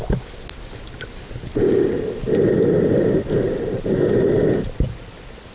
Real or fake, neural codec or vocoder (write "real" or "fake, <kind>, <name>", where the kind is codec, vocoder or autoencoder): real